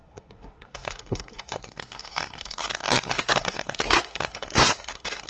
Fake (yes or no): yes